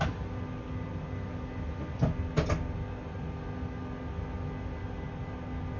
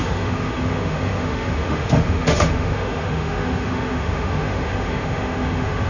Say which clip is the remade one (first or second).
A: second